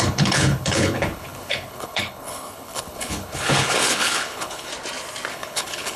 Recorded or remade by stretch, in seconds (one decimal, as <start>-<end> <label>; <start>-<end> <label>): 0.0-4.7 remade; 4.7-5.3 recorded; 5.3-6.0 remade